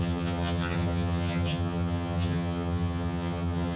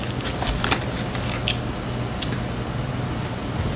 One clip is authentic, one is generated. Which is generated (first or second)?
first